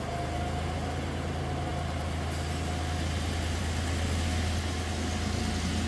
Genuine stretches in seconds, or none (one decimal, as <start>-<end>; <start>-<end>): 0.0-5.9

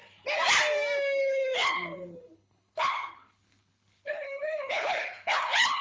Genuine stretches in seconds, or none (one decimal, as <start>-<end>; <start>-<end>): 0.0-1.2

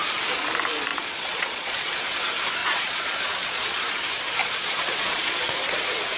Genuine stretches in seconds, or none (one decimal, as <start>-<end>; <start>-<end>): 0.0-0.9; 2.0-2.6; 3.8-4.4; 5.5-6.2